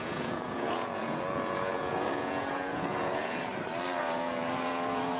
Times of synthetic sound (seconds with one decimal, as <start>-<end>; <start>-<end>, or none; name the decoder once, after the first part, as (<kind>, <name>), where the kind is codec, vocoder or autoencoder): 0.0-3.5 (vocoder, Vocos); 4.0-5.2